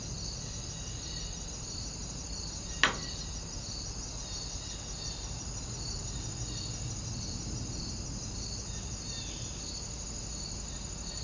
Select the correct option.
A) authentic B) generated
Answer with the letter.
A